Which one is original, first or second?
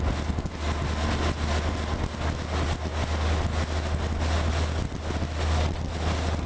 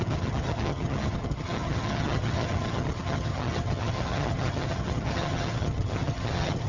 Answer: first